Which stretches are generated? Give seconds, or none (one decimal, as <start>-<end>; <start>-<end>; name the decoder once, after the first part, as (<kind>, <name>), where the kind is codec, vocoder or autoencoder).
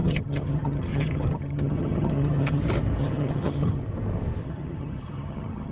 0.0-2.6 (vocoder, HiFi-GAN); 3.0-3.8; 4.4-5.7